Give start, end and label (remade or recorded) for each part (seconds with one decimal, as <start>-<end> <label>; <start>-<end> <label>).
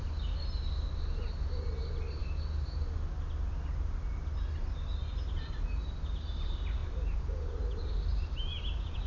0.0-9.1 recorded